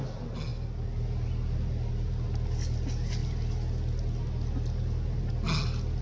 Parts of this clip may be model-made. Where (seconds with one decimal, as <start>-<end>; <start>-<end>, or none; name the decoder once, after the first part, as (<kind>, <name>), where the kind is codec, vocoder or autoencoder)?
none

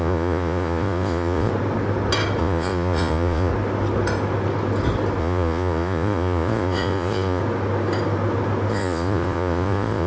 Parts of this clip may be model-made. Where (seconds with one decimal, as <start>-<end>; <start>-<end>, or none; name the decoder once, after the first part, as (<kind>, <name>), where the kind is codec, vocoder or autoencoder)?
0.0-1.5 (vocoder, Vocos); 2.4-3.5; 5.2-7.4; 8.7-10.1

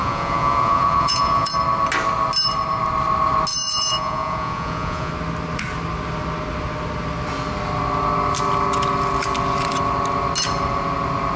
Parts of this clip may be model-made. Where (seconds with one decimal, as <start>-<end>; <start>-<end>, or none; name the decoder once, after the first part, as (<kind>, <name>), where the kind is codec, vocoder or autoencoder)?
0.0-1.5 (vocoder, Vocos); 3.5-5.1

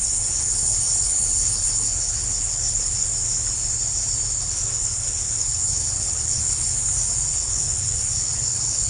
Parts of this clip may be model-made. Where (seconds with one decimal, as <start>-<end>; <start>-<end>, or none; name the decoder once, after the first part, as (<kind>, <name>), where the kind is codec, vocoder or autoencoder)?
0.0-3.1 (codec, HILCodec); 4.4-6.7; 7.3-8.9

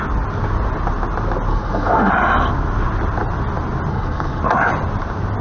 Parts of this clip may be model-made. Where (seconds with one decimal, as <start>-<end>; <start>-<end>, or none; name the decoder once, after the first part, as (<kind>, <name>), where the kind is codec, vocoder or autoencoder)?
1.5-2.1 (codec, SNAC); 3.9-4.4

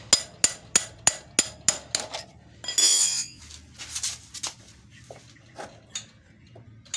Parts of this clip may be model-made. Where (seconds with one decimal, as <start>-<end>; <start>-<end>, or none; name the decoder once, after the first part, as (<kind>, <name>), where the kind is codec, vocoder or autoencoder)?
2.8-3.4 (vocoder, Vocos)